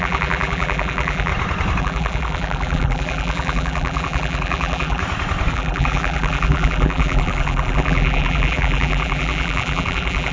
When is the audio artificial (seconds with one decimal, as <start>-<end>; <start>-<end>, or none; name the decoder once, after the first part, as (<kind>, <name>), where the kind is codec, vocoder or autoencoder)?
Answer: 0.0-1.3 (vocoder, BigVGAN v2); 1.8-5.0; 5.5-10.3